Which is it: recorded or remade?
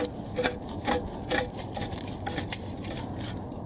recorded